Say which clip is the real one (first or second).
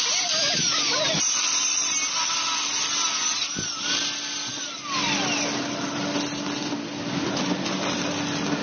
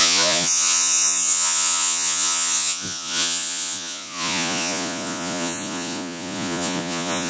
first